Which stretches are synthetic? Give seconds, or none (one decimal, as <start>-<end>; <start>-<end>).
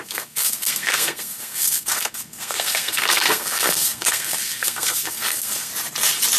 0.0-5.7